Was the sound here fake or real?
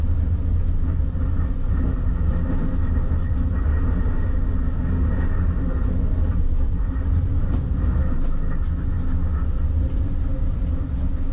real